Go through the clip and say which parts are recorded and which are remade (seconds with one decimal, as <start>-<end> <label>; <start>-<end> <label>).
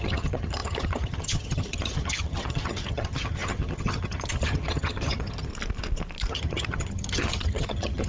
0.0-5.5 remade; 5.5-6.3 recorded; 6.3-8.1 remade